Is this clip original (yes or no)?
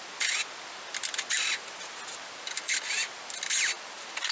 yes